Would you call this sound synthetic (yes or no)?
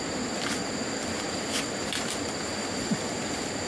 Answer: no